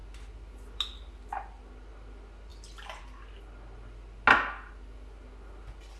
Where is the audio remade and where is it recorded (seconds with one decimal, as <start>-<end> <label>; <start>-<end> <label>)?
0.0-6.0 recorded